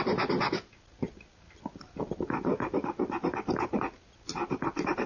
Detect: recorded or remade recorded